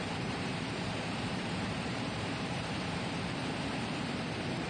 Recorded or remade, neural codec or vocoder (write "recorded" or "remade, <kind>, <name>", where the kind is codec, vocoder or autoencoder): remade, vocoder, BigVGAN v2